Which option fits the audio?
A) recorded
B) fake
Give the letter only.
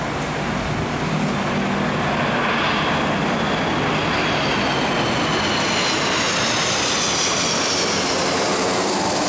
A